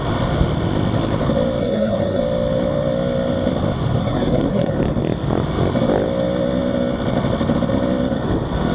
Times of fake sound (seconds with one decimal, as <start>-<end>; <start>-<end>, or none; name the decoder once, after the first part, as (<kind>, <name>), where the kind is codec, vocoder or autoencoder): 1.6-2.2 (codec, SNAC); 4.0-4.7